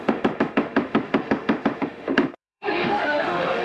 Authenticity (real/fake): fake